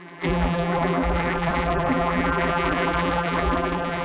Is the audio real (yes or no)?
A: no